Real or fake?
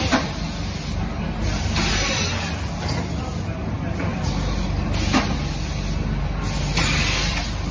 real